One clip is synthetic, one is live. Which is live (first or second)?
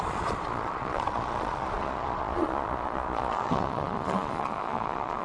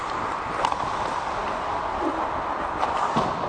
second